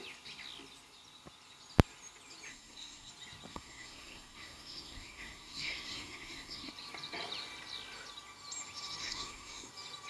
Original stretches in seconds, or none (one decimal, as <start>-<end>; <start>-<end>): 0.0-2.5; 3.1-3.5; 6.7-9.0; 9.7-10.1